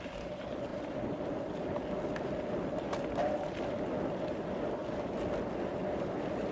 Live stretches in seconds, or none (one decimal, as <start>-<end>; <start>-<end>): 0.0-6.5